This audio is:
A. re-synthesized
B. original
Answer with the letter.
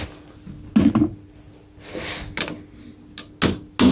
B